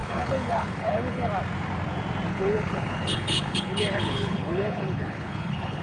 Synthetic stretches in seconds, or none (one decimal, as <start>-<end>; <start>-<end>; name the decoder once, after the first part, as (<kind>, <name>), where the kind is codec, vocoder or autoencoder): 0.0-1.3 (codec, HILCodec); 2.3-5.8